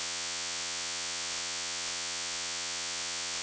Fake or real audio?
fake